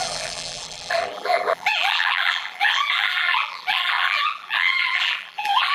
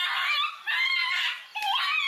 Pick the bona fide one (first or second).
second